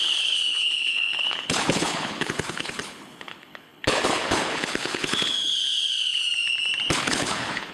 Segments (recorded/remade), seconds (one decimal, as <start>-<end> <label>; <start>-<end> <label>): 0.0-6.2 remade; 6.2-7.0 recorded; 7.0-7.7 remade